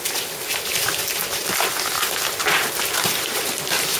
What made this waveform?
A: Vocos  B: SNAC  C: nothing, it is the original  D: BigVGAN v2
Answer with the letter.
C